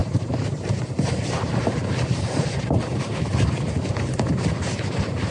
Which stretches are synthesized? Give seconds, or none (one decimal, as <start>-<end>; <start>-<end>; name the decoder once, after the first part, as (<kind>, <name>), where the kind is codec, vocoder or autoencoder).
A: 0.0-3.2 (vocoder, BigVGAN v2)